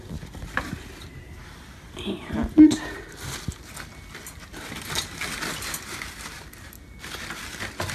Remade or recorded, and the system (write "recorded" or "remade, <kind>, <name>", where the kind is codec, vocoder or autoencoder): recorded